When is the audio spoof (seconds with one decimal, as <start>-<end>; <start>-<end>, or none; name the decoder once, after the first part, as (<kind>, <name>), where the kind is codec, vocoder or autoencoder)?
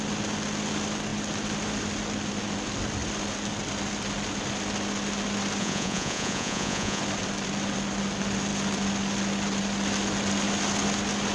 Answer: 5.6-7.0 (vocoder, Vocos)